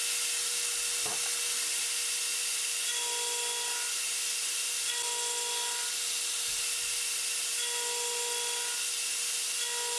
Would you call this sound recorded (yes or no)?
yes